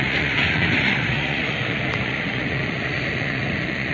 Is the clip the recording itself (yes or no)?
no